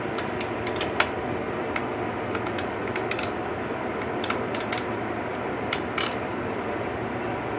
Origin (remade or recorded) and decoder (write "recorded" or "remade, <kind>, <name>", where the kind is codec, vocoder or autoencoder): recorded